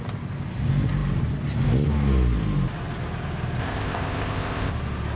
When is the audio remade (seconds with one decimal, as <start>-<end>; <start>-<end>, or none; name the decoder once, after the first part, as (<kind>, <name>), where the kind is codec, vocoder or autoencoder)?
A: 3.6-4.7 (codec, ZipCodec)